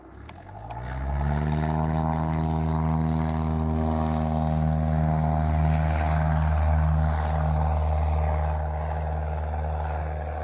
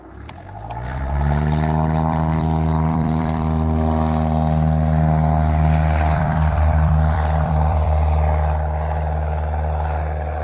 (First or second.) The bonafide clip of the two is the first